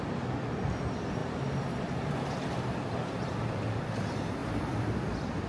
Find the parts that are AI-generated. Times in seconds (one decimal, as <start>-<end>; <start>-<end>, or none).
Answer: 1.2-3.9; 4.4-5.5